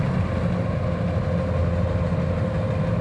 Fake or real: real